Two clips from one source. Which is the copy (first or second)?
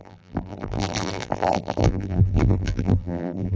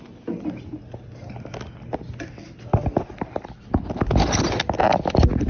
first